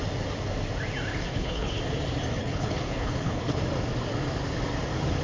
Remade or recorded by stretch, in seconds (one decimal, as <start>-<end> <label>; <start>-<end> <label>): 0.0-1.1 recorded; 1.1-1.8 remade; 1.8-2.4 recorded; 2.4-3.6 remade; 3.6-5.2 recorded